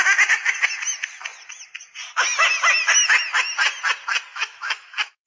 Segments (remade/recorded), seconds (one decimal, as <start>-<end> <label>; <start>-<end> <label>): 0.0-4.3 recorded; 4.3-5.3 remade